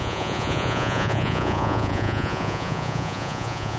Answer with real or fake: fake